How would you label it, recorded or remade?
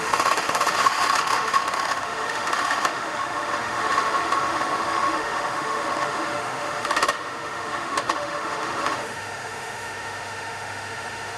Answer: remade